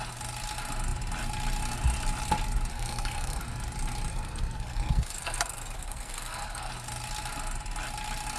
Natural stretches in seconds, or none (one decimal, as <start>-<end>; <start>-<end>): 0.0-2.7; 3.4-4.1; 6.7-8.4